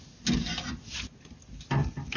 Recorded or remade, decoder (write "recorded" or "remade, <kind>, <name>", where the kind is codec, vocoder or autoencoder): recorded